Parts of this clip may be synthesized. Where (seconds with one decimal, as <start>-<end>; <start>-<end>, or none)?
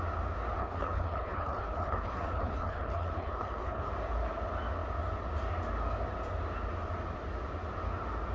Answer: 0.6-3.9